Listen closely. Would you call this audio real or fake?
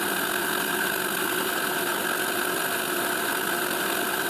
real